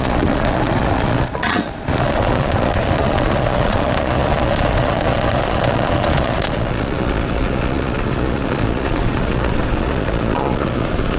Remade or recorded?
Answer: remade